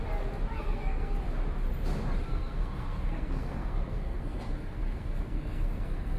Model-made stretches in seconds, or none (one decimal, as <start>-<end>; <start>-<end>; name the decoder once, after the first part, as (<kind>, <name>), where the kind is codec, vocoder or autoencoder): 0.5-1.2 (codec, SNAC); 2.3-6.2